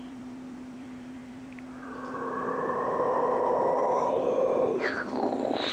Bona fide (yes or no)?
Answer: no